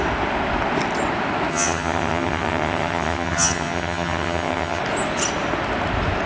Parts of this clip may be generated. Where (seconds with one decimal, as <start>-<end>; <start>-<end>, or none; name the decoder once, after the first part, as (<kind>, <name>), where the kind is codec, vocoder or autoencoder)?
1.5-4.8 (vocoder, HiFi-GAN)